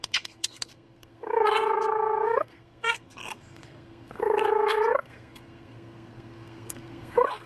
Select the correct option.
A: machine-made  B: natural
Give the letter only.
A